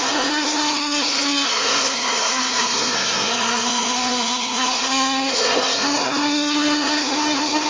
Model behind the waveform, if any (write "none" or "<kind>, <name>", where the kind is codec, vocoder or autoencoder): codec, SNAC